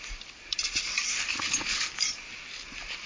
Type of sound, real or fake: real